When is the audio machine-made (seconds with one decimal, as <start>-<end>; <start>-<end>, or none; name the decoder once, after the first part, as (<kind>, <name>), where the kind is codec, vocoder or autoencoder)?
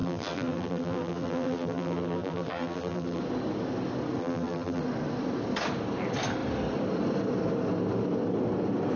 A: 0.0-3.2 (vocoder, BigVGAN v2); 4.2-4.8